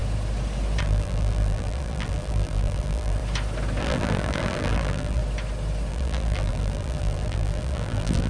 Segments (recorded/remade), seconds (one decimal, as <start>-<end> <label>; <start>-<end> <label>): 0.0-0.8 recorded; 0.8-3.2 remade; 3.2-3.8 recorded; 3.8-5.2 remade; 5.2-5.9 recorded; 5.9-8.3 remade

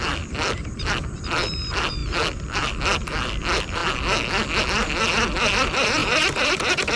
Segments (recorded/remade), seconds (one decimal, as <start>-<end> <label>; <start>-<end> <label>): 0.0-3.8 remade; 3.8-4.6 recorded; 4.6-7.0 remade

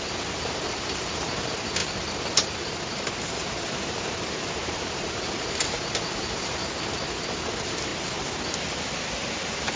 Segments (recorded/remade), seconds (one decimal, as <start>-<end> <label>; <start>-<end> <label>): 0.0-4.6 recorded; 4.6-6.4 remade; 6.4-9.8 recorded

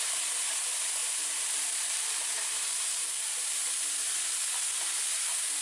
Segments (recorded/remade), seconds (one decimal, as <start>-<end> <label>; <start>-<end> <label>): 0.0-1.0 recorded; 1.0-3.6 remade; 3.6-5.6 recorded

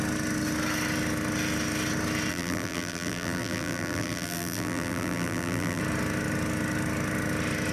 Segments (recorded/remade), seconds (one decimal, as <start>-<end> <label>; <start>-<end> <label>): 0.0-2.3 recorded; 2.3-5.8 remade; 5.8-7.7 recorded

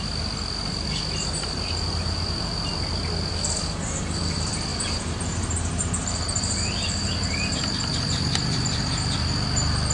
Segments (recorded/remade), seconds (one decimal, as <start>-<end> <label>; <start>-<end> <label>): 0.0-4.7 recorded; 4.7-7.6 remade; 7.6-9.9 recorded

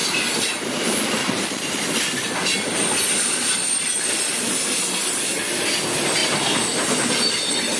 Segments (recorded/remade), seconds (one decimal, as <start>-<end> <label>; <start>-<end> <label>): 0.0-1.8 remade; 1.8-6.2 recorded; 6.2-7.1 remade; 7.1-7.8 recorded